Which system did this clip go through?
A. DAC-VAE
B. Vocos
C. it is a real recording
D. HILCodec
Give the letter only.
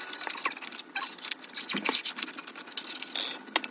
C